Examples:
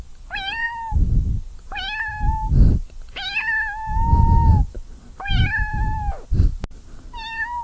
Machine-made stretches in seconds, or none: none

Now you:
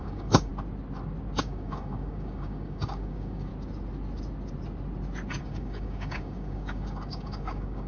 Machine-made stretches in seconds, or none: 0.0-0.5 (codec, DAC); 1.4-3.5; 5.4-7.9

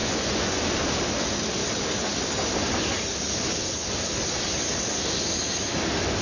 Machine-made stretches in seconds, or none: 0.0-0.6 (vocoder, Vocos)

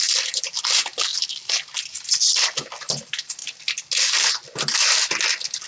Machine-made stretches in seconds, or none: none